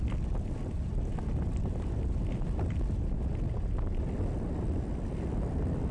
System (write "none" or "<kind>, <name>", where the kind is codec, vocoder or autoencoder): none